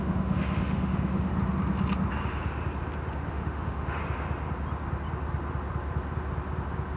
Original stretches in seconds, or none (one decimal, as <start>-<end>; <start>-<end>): 1.3-3.3; 4.0-7.0